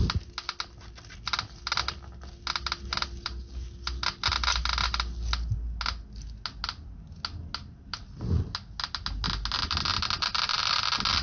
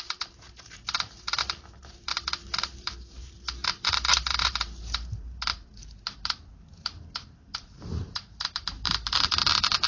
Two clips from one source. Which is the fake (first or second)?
second